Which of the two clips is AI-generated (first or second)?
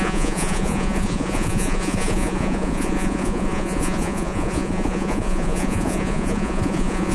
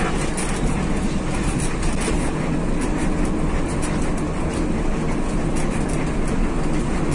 first